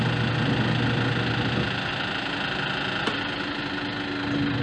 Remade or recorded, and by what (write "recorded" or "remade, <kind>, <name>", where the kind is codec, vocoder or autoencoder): recorded